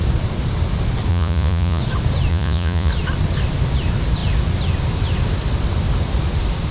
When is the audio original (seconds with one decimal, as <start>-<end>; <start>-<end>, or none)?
0.0-1.1; 1.8-2.3; 2.9-6.7